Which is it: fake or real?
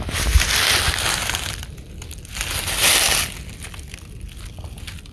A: real